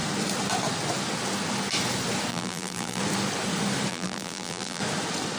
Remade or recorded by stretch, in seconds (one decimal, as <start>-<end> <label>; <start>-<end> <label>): 0.0-2.3 recorded; 2.3-3.0 remade; 3.0-3.9 recorded; 3.9-4.8 remade; 4.8-5.4 recorded